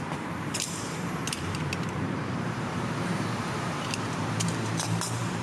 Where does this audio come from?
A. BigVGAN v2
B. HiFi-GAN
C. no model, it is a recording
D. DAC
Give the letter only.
A